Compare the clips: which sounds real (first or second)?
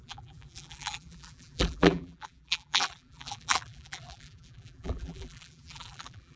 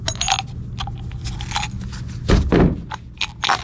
second